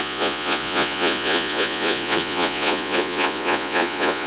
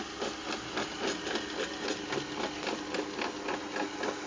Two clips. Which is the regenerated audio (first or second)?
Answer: first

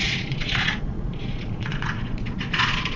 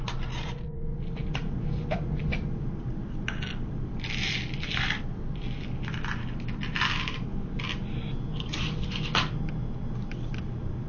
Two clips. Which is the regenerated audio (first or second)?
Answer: first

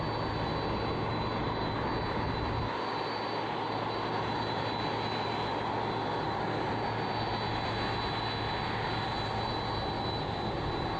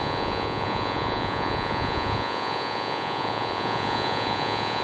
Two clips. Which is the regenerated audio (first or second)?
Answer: second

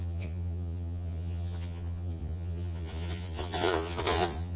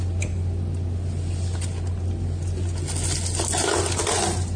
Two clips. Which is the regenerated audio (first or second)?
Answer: first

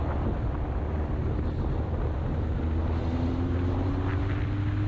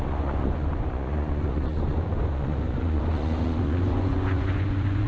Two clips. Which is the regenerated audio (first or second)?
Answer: second